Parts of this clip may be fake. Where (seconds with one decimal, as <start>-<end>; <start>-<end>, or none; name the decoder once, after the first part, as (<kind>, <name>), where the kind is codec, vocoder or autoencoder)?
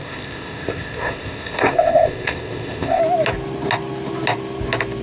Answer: 0.0-3.0 (codec, ZipCodec)